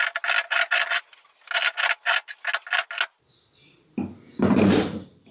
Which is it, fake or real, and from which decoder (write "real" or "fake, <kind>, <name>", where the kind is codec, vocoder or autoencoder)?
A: real